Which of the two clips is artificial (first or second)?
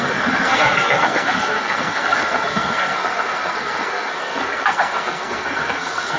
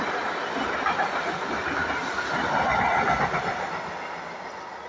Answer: first